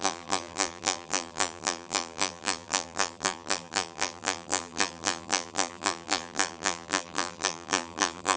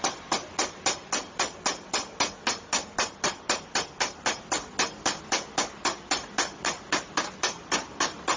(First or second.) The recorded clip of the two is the second